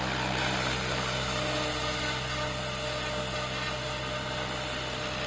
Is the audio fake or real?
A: real